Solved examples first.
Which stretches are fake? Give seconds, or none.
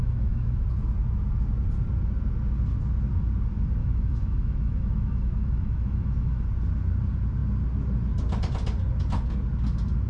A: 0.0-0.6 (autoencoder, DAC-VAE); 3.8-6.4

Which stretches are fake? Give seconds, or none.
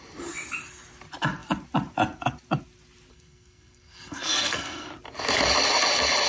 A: 3.1-4.9 (codec, SNAC)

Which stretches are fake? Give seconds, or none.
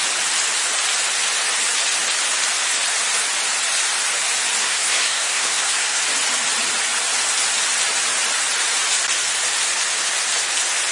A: 4.6-6.0 (codec, SNAC)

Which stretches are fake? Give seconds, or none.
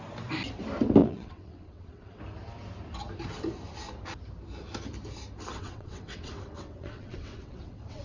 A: 1.0-2.2 (vocoder, WaveNeXt); 5.5-8.0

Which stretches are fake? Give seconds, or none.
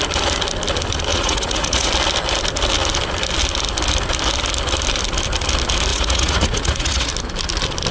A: 1.1-1.9 (vocoder, Vocos); 5.9-7.1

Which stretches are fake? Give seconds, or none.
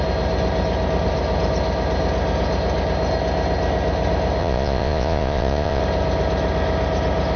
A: 4.4-5.8 (vocoder, Vocos)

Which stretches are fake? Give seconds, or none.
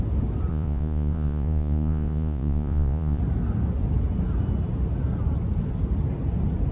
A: 0.5-3.2 (vocoder, Vocos)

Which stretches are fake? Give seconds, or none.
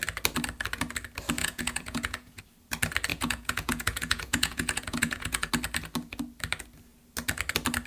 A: 1.4-2.4 (vocoder, Vocos); 3.1-5.5